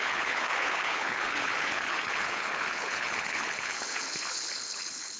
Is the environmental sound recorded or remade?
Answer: remade